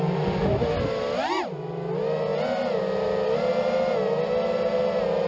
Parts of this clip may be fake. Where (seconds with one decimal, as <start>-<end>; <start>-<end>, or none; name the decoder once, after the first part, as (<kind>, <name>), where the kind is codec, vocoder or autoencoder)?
none